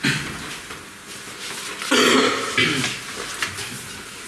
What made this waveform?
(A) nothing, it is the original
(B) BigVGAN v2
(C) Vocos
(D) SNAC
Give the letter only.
A